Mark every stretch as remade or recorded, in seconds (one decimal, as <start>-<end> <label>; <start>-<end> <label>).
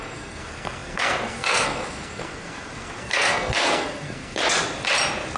0.0-4.4 remade; 4.4-5.4 recorded